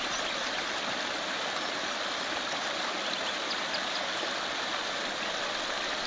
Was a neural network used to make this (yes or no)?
no